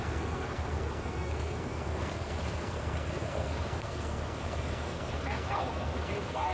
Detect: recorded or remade remade